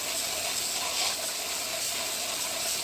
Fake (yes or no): no